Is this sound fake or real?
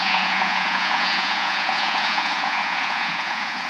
fake